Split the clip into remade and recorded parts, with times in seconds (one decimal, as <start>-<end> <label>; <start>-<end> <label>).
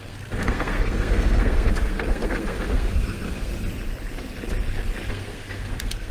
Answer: 0.0-3.5 remade; 3.5-5.1 recorded; 5.1-6.1 remade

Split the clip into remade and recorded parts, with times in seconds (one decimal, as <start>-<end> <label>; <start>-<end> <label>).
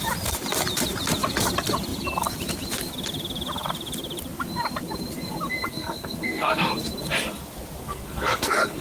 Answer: 0.0-5.7 recorded; 5.7-6.7 remade; 6.7-7.8 recorded; 7.8-8.8 remade